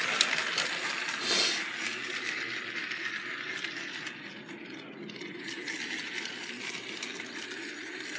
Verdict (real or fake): real